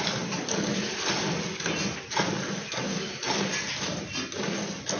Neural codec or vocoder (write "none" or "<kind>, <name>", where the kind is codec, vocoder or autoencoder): none